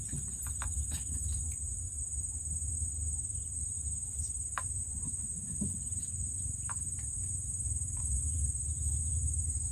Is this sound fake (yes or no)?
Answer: no